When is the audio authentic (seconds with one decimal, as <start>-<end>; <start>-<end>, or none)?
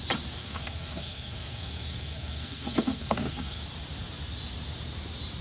0.0-0.4; 3.6-5.4